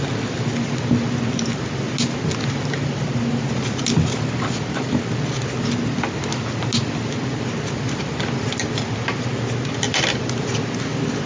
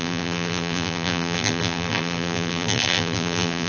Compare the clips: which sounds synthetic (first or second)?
second